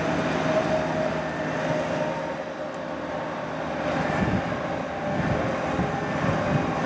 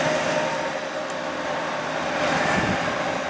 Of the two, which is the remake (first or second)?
second